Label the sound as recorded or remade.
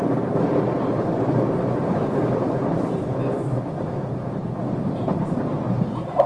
remade